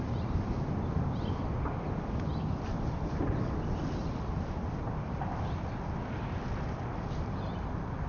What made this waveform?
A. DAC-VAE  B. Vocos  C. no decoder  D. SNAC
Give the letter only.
C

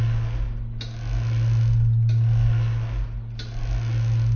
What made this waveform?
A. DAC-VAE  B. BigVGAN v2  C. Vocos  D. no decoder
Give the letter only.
D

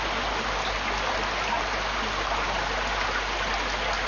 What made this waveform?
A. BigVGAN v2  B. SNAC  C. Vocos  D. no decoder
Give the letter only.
D